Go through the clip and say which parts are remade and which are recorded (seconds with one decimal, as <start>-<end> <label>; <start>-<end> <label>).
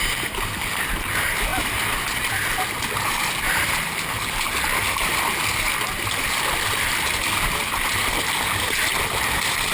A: 0.0-9.7 recorded